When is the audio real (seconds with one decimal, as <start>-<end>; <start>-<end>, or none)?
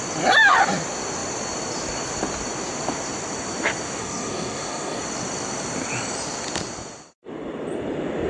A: 0.0-4.0; 5.0-8.3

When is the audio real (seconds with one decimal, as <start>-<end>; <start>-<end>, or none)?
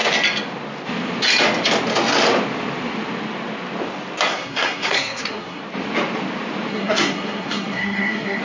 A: 0.0-4.3; 5.6-6.7